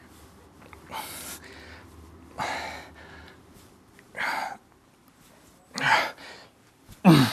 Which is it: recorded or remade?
recorded